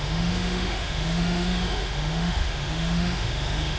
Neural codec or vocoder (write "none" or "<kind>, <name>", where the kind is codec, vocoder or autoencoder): autoencoder, DAC-VAE